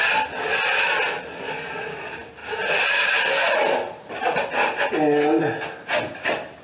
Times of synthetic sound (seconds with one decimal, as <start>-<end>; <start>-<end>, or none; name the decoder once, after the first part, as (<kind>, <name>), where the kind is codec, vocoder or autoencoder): none